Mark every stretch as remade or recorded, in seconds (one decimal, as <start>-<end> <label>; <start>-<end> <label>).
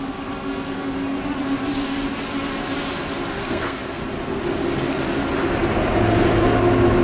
0.0-3.4 recorded; 3.4-4.0 remade; 4.0-7.0 recorded